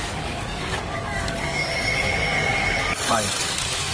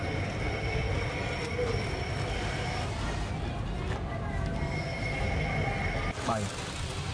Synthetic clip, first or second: first